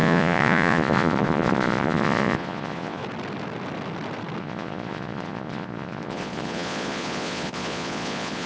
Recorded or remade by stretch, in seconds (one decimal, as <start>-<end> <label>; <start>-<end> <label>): 0.0-3.0 remade; 3.0-4.4 recorded; 4.4-8.5 remade